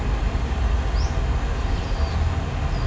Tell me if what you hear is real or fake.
real